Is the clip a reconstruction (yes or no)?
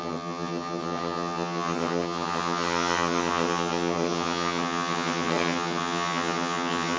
yes